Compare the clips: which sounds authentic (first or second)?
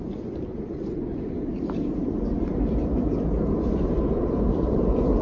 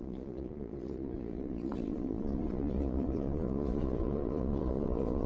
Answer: first